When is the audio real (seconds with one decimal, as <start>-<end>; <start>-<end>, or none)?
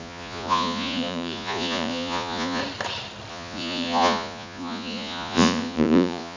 2.6-3.3